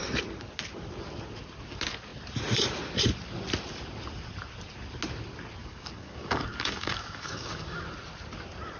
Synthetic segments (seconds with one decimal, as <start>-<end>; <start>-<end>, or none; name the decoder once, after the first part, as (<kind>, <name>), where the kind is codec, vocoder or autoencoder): 5.6-7.8 (codec, DAC)